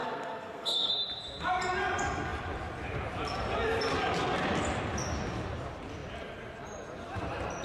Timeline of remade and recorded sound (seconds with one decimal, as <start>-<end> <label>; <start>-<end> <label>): 0.0-0.9 remade; 0.9-7.6 recorded